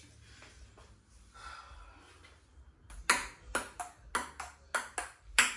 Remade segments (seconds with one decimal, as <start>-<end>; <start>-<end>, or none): none